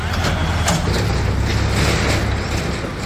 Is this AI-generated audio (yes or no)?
no